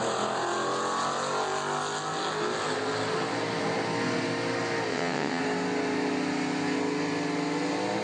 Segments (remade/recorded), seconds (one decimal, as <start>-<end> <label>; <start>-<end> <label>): 0.0-4.9 recorded; 4.9-5.4 remade; 5.4-8.0 recorded